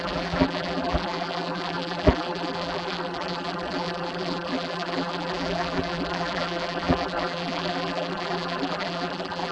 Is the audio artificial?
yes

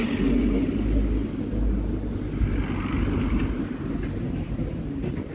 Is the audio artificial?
no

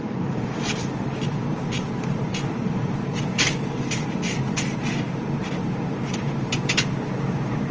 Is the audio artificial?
yes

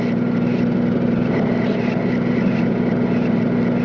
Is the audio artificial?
no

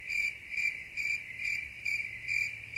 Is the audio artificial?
yes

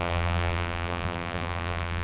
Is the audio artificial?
yes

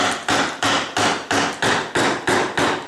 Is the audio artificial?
no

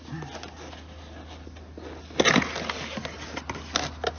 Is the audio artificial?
no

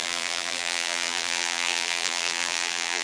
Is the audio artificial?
yes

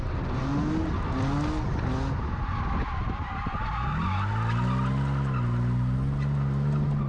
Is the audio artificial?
no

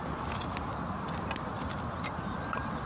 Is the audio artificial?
no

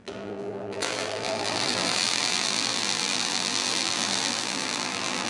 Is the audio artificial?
yes